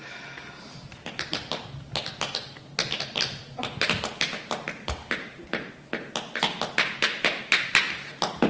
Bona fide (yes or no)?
yes